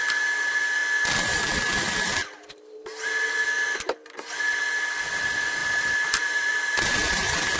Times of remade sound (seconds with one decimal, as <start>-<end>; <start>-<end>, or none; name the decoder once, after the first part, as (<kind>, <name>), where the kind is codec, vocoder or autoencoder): 5.6-7.6 (vocoder, BigVGAN v2)